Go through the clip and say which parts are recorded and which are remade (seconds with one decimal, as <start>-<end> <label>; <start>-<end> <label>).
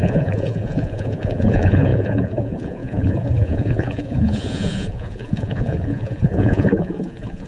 0.0-7.5 remade